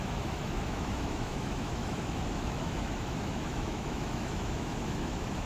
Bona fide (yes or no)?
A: no